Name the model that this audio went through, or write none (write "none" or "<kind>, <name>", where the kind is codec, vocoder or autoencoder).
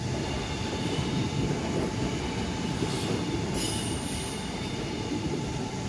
none